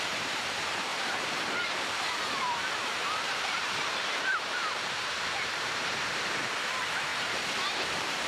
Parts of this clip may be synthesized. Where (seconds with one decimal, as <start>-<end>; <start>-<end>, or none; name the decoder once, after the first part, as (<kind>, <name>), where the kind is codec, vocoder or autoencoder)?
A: 0.0-8.3 (vocoder, BigVGAN v2)

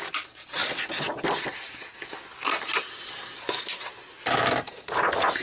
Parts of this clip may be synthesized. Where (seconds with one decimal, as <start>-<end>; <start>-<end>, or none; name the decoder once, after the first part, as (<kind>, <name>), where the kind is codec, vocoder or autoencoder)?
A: none

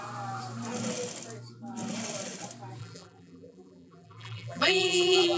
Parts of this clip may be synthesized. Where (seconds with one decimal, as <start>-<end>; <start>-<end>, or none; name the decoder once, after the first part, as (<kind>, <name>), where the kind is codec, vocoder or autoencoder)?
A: 2.8-5.4 (vocoder, BigVGAN v2)